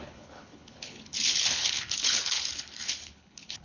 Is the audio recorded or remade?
remade